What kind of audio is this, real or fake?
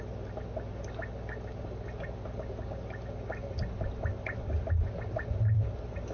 real